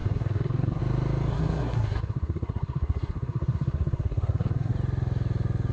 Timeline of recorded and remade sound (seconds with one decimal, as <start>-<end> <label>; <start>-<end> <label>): 0.0-0.8 remade; 0.8-1.3 recorded; 1.3-4.7 remade; 4.7-5.7 recorded